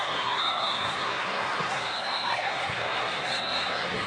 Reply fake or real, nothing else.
fake